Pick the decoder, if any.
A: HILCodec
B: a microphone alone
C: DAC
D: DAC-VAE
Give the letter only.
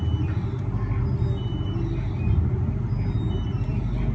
B